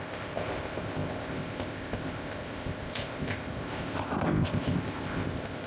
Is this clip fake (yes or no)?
yes